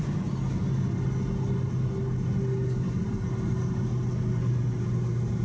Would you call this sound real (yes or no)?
yes